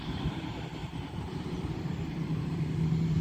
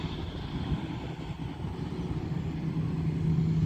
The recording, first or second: second